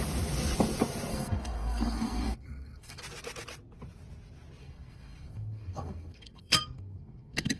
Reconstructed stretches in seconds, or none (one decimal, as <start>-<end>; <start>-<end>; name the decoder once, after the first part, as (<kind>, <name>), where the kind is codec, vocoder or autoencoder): 1.1-3.0 (codec, SNAC); 4.6-7.6

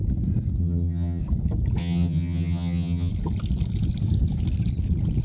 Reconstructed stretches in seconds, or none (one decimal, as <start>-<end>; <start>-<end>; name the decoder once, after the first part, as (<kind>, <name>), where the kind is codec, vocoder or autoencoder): 0.6-1.2 (vocoder, HiFi-GAN); 1.8-3.1

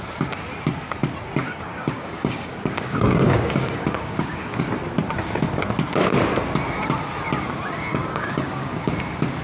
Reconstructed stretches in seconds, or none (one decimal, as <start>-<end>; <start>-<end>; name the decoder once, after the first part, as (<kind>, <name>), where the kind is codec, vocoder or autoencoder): 1.4-4.6 (codec, DAC); 7.9-8.9

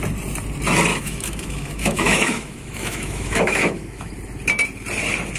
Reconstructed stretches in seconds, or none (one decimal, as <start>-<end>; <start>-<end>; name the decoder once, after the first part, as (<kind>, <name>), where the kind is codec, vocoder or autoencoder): 0.9-4.1 (autoencoder, DAC-VAE)

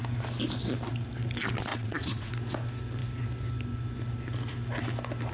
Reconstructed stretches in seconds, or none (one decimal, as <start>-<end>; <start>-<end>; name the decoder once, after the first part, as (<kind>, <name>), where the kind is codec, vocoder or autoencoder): 1.7-2.3 (vocoder, WaveNeXt)

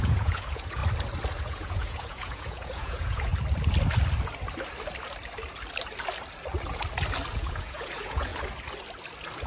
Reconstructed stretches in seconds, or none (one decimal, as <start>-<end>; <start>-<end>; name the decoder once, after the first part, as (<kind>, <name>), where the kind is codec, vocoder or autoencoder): 0.0-0.8 (vocoder, Vocos); 1.4-3.3; 7.3-8.3

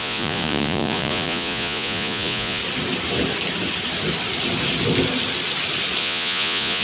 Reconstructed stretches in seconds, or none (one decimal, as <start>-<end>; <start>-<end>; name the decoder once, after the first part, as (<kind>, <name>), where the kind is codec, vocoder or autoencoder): 0.0-2.6 (vocoder, Vocos); 6.0-6.8